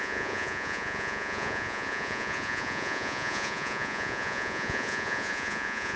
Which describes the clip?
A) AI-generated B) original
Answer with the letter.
A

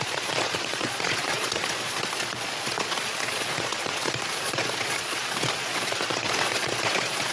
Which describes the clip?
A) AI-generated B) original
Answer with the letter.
A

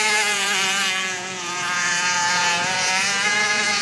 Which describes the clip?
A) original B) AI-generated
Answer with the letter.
B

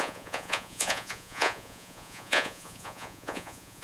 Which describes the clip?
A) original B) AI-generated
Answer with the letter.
B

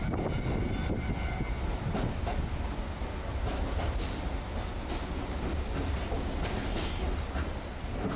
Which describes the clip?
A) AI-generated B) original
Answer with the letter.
B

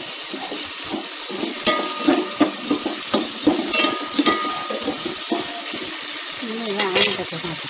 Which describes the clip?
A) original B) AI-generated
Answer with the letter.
A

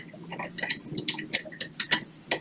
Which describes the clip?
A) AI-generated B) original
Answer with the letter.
B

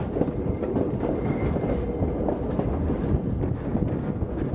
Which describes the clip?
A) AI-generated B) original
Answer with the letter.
B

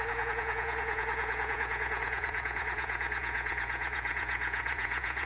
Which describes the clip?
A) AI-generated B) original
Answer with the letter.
A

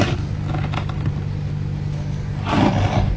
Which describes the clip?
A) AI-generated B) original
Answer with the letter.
B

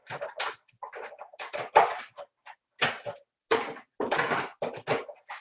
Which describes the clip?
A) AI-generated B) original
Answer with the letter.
B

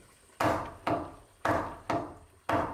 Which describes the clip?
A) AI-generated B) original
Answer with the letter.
B